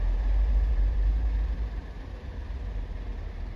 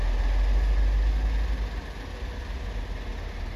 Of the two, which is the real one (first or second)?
second